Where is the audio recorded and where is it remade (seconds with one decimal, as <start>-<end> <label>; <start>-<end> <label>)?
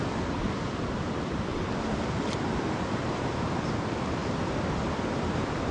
0.0-1.5 remade; 1.5-2.3 recorded; 2.3-5.7 remade